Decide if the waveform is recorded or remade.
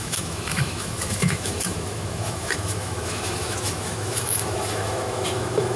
remade